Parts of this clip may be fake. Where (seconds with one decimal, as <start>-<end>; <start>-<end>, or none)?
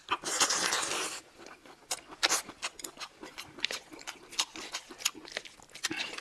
none